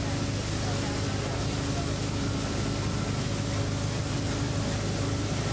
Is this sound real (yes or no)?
yes